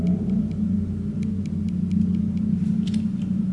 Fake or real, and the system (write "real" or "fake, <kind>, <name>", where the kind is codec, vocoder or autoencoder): real